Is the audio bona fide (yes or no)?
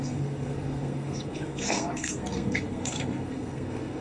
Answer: no